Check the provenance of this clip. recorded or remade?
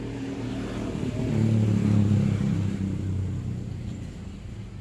recorded